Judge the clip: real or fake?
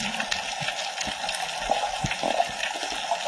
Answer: real